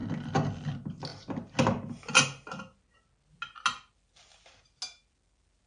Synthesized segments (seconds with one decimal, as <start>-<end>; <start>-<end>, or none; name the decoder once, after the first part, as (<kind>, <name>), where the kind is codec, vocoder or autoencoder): none

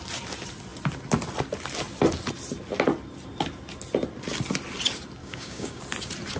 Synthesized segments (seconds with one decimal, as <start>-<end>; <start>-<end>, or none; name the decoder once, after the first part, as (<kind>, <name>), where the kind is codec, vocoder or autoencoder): 5.2-5.8 (codec, DAC)

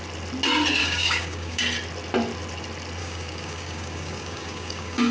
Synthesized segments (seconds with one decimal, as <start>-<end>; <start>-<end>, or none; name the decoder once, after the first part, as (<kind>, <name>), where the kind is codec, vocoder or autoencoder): 0.8-1.6 (codec, DAC); 3.0-5.1